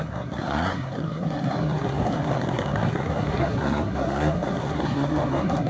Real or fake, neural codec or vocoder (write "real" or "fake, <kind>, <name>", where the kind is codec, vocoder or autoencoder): fake, codec, SNAC